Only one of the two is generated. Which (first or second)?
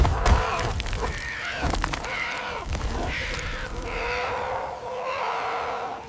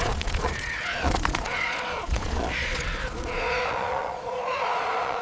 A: second